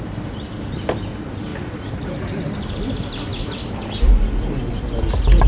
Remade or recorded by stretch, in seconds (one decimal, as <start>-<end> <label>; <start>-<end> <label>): 0.0-5.5 recorded